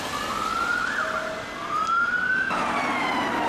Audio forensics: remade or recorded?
recorded